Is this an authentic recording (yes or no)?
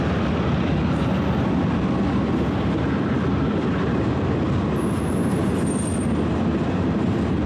yes